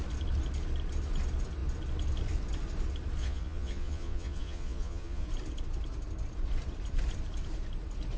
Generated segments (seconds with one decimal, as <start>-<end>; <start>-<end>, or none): 3.2-5.3